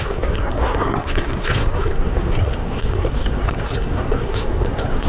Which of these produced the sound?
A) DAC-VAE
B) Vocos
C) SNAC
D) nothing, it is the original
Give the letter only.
C